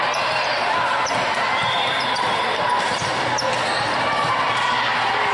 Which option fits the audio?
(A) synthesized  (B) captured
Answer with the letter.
A